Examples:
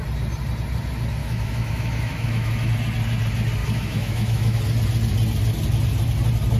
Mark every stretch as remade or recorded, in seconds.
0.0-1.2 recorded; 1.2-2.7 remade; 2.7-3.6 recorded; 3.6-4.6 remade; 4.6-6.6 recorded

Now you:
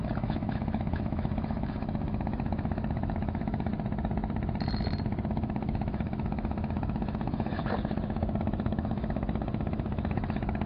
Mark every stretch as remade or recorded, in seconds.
0.0-3.7 remade; 3.7-5.3 recorded; 5.3-7.6 remade; 7.6-8.4 recorded; 8.4-10.7 remade

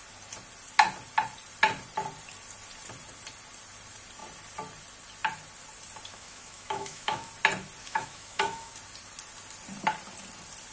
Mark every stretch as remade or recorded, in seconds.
0.0-6.1 recorded; 6.1-7.3 remade; 7.3-7.8 recorded; 7.8-8.7 remade; 8.7-10.7 recorded

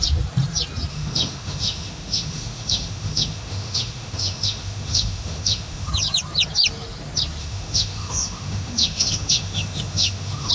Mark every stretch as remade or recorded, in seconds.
0.0-0.9 recorded; 0.9-5.9 remade; 5.9-7.4 recorded; 7.4-10.5 remade

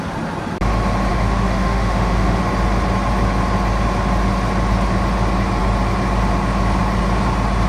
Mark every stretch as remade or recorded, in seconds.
0.0-1.1 recorded; 1.1-2.4 remade; 2.4-7.7 recorded

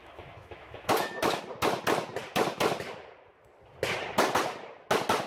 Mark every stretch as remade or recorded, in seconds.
0.0-1.4 remade; 1.4-5.3 recorded